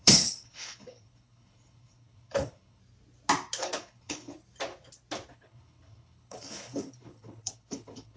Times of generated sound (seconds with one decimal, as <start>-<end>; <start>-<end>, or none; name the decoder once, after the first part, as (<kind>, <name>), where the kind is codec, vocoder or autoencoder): 0.0-2.8 (codec, HILCodec); 3.6-4.3; 5.3-8.2